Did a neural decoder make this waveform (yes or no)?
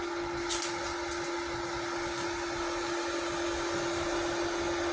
no